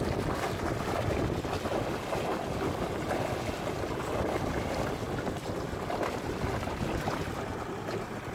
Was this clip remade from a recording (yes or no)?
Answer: no